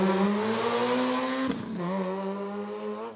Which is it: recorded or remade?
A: recorded